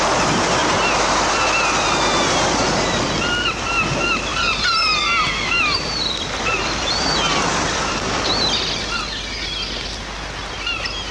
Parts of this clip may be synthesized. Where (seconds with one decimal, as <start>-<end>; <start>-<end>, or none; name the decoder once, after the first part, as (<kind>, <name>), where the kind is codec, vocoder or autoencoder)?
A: 4.3-9.0 (vocoder, BigVGAN v2); 10.4-11.1